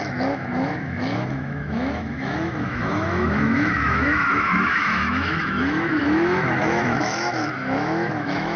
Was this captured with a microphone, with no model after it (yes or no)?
no